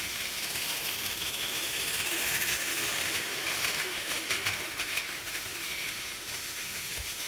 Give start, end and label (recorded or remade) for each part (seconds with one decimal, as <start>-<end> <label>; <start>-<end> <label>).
0.0-7.3 remade